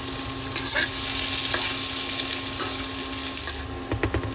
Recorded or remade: recorded